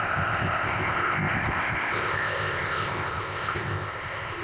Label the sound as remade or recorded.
remade